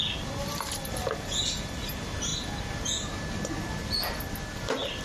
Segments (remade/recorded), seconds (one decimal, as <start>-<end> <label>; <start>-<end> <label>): 0.0-5.0 recorded